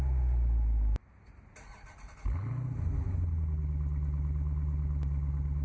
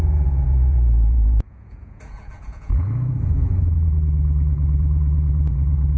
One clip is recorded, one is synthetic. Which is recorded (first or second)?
first